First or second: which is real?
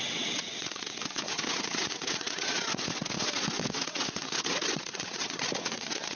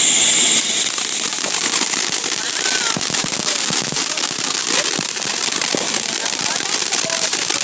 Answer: second